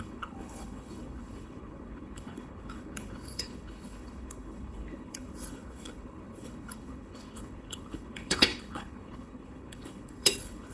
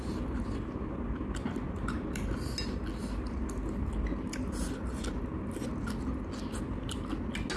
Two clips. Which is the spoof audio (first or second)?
first